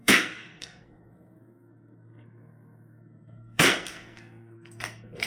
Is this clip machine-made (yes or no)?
yes